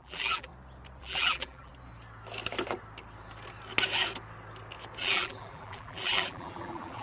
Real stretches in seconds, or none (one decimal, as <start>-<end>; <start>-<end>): 0.5-1.0; 1.7-5.0